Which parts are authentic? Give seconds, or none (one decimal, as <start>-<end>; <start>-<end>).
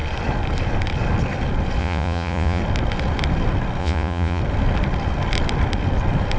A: 0.0-1.8; 2.6-3.8; 4.4-6.4